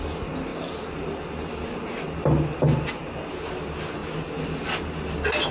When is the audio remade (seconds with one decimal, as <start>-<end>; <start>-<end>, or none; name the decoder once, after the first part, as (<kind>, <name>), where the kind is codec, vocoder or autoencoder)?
none